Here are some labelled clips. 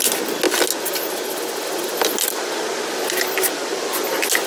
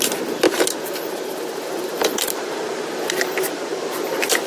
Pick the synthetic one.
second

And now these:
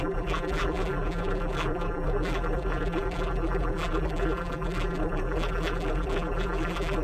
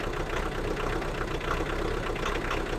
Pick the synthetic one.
first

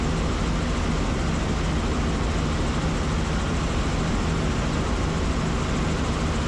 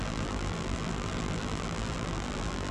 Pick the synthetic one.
second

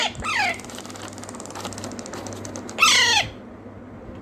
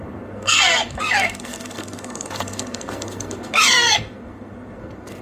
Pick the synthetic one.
second